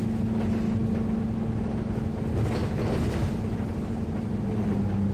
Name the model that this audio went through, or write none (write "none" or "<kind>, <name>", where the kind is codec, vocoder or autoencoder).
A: none